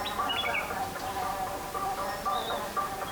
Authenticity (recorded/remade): recorded